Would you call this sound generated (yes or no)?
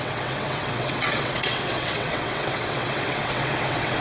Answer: yes